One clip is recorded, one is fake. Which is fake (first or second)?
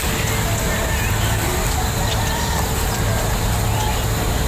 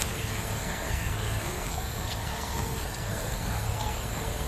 second